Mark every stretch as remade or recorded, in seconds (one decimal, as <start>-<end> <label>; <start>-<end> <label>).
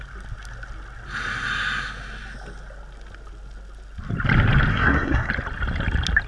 0.0-4.7 recorded; 4.7-5.3 remade; 5.3-6.3 recorded